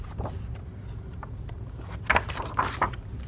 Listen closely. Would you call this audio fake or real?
real